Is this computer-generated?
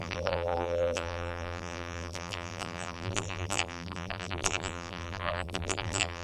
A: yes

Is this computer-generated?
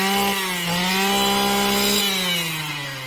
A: no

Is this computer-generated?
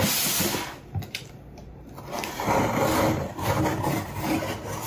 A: no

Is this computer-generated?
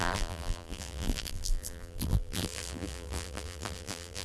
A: yes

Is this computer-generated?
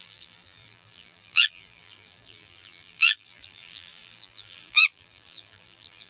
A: yes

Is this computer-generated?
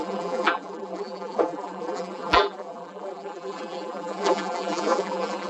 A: yes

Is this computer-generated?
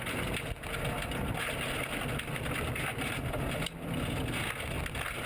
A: no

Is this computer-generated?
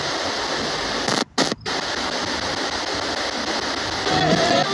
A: no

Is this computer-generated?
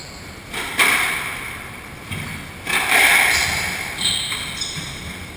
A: no